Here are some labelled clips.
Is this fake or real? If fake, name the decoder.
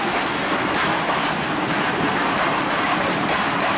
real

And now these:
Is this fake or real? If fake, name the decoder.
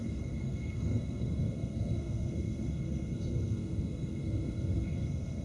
fake, codec, SNAC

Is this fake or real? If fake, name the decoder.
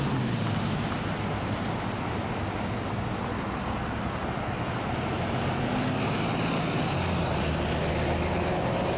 real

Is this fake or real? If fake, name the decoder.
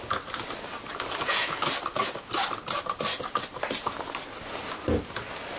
real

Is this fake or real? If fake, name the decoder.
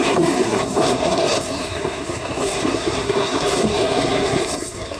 fake, codec, SNAC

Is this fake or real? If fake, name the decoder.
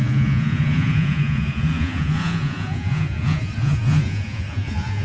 fake, vocoder, Vocos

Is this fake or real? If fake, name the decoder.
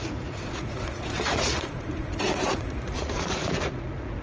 fake, vocoder, Vocos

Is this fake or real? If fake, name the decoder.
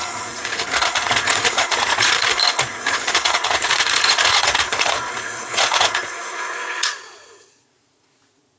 fake, vocoder, Vocos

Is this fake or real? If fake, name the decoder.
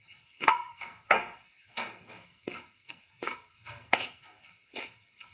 fake, codec, SNAC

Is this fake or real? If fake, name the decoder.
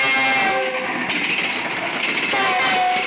real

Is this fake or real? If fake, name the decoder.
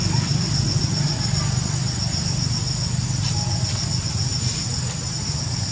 real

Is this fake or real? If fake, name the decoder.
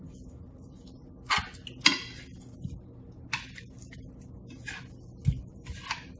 real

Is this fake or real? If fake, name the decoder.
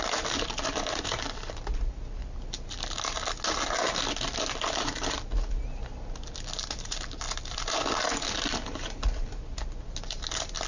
real